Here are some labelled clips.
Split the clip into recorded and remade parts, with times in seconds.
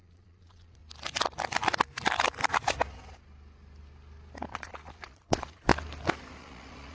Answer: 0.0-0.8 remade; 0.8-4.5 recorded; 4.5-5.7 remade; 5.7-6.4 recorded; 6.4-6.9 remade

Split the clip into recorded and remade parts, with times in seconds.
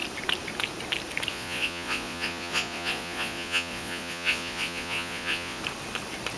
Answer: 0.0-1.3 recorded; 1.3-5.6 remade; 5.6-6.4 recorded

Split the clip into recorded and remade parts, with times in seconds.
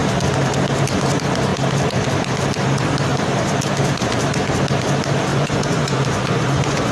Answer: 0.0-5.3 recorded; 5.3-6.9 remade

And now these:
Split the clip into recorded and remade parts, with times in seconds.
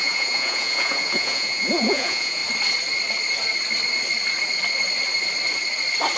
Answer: 0.0-2.4 remade; 2.4-6.2 recorded